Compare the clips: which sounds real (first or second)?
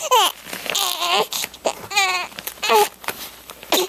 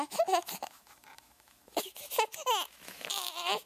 first